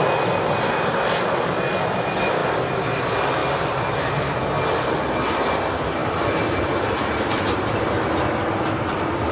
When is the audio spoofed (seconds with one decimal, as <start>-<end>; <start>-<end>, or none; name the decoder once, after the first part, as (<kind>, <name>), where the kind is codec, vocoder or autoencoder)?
6.0-7.7 (vocoder, BigVGAN v2)